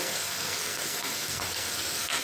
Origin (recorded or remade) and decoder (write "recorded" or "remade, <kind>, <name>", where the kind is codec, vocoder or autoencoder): remade, codec, SNAC